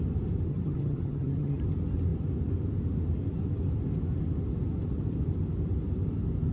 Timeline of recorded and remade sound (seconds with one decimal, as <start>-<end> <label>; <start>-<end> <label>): 0.0-0.5 recorded; 0.5-1.6 remade; 1.6-6.5 recorded